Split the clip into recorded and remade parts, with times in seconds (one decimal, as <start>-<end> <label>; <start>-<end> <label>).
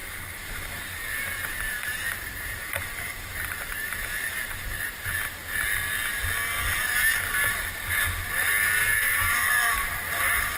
0.0-5.4 remade; 5.4-9.0 recorded; 9.0-10.6 remade